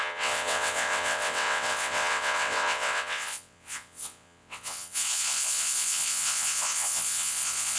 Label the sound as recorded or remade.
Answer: remade